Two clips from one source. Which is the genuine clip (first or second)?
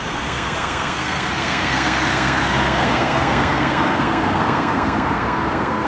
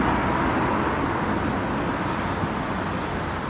second